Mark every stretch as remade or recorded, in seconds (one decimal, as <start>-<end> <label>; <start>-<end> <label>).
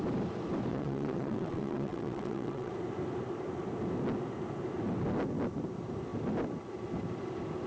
0.0-0.7 recorded; 0.7-2.7 remade; 2.7-7.7 recorded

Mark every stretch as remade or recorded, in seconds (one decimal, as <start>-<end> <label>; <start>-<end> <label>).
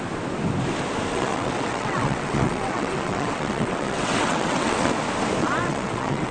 0.0-1.1 recorded; 1.1-4.9 remade; 4.9-5.4 recorded; 5.4-6.3 remade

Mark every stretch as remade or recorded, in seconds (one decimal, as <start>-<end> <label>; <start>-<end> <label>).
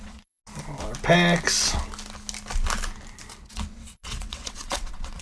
0.0-0.4 remade; 0.4-3.5 recorded; 3.5-5.2 remade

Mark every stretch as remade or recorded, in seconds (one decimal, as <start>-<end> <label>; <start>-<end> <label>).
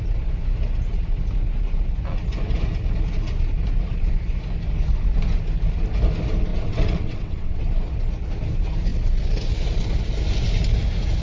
0.0-6.5 recorded; 6.5-7.6 remade; 7.6-11.2 recorded